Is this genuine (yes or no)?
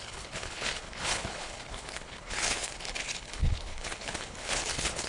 no